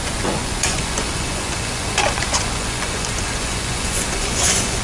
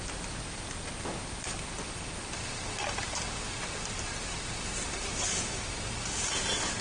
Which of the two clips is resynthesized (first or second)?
first